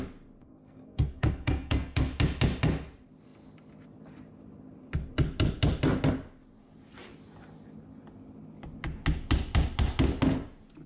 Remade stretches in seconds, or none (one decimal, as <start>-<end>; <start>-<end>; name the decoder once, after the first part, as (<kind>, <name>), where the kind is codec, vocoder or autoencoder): 0.4-2.1 (codec, SNAC)